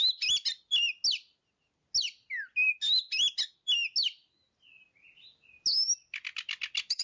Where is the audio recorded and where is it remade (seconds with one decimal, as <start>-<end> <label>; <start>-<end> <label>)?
0.0-7.0 recorded